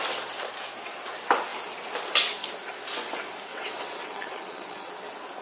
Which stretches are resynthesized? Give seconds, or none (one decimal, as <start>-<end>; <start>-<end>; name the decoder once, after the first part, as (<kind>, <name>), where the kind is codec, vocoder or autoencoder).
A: 3.5-4.9 (vocoder, WaveNeXt)